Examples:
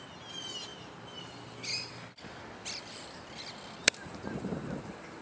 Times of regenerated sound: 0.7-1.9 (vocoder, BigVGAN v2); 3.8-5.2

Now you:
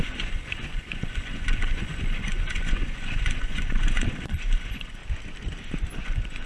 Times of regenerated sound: 0.0-5.0 (vocoder, Vocos); 6.0-6.5